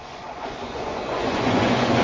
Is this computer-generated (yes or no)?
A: yes